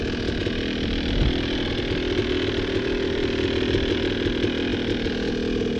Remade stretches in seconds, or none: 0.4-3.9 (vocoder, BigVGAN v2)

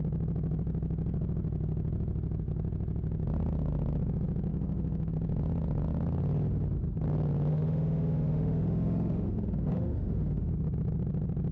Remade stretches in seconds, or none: 4.5-5.1 (autoencoder, DAC-VAE); 7.5-10.5

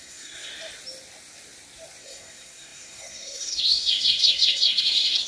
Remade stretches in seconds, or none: 0.0-0.5 (codec, SNAC); 2.0-5.3

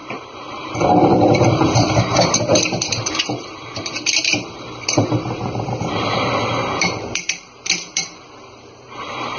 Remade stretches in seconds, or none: 0.0-9.4 (vocoder, BigVGAN v2)